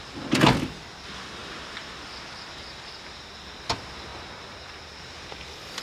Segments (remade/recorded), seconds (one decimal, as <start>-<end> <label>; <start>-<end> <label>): 0.0-1.4 recorded; 1.4-3.2 remade; 3.2-4.1 recorded; 4.1-5.0 remade; 5.0-5.8 recorded